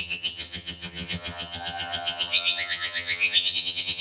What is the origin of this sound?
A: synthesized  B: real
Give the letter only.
A